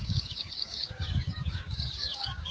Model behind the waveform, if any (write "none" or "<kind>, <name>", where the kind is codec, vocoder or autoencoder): codec, DAC